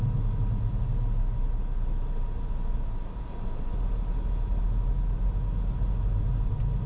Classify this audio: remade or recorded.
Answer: recorded